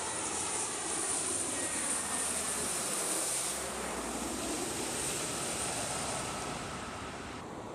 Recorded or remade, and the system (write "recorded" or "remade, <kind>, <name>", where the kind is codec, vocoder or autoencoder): remade, vocoder, BigVGAN v2